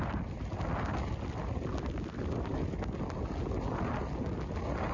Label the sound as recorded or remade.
recorded